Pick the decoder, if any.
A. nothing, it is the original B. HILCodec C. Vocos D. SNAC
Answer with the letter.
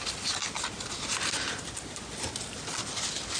A